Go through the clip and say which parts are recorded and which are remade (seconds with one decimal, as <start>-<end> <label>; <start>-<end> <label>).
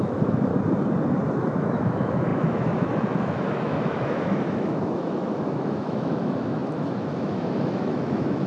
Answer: 0.0-0.5 remade; 0.5-1.3 recorded; 1.3-8.5 remade